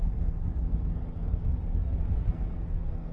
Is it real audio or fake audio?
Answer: fake